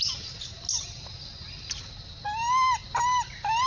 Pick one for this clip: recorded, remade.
recorded